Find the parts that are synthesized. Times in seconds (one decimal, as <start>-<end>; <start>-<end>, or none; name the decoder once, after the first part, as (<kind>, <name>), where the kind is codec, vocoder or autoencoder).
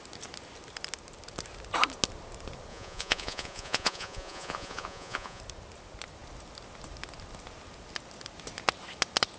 2.7-5.4 (vocoder, Vocos)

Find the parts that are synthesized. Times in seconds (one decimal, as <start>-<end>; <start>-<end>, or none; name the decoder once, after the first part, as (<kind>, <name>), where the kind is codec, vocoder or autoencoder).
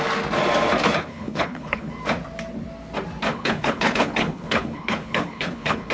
1.0-1.9 (codec, HILCodec); 3.3-5.9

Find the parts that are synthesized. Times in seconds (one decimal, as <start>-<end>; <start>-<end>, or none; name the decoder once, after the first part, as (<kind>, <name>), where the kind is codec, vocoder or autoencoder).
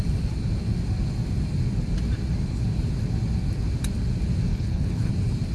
4.5-5.1 (codec, HILCodec)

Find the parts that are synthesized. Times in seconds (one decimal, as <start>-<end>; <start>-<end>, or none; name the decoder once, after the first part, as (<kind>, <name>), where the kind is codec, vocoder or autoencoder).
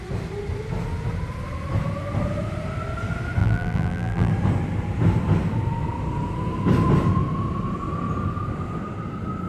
3.4-4.3 (vocoder, BigVGAN v2)